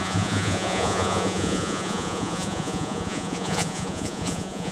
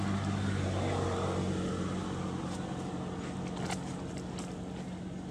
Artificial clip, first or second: first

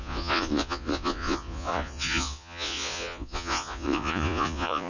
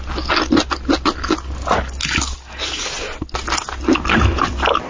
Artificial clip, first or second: first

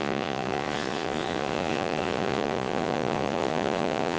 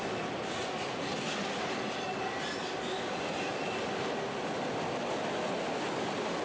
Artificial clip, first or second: first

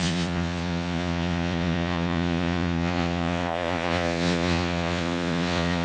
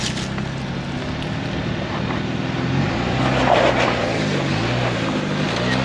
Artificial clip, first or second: first